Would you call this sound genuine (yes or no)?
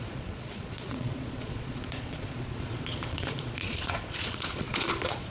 no